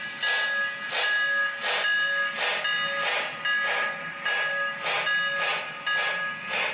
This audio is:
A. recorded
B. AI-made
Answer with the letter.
A